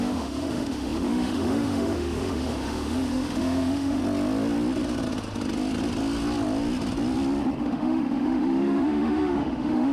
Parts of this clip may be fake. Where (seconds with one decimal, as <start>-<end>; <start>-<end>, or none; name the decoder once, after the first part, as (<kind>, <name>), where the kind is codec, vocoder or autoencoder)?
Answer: 0.0-4.0 (autoencoder, DAC-VAE); 7.6-9.9